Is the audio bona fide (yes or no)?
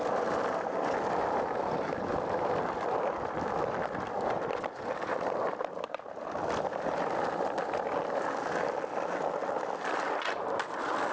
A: yes